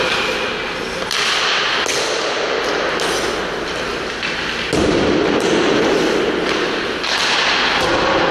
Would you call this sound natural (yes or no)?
yes